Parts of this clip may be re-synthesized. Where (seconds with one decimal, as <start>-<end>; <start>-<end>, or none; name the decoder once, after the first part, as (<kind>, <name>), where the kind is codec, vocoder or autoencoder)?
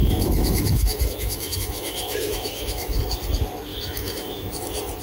0.0-3.0 (autoencoder, DAC-VAE); 3.7-4.6